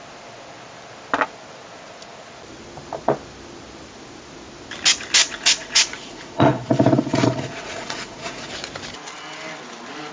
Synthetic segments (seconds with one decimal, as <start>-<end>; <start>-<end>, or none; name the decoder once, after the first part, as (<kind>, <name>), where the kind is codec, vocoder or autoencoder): 5.2-8.5 (vocoder, Vocos)